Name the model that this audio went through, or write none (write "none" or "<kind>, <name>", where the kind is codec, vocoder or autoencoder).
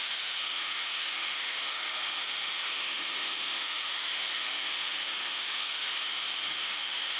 autoencoder, DAC-VAE